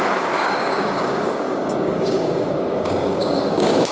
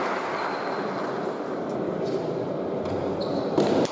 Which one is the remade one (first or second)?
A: first